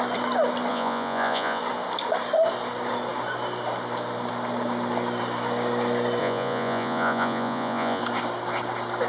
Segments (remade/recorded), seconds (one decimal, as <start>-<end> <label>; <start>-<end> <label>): 0.0-0.7 recorded; 0.7-1.6 remade; 1.6-6.2 recorded; 6.2-8.0 remade; 8.0-9.1 recorded